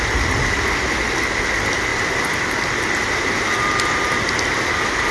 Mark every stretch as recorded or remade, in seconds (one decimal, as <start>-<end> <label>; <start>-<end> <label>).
0.0-5.1 recorded